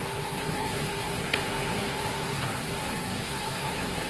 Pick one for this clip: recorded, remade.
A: remade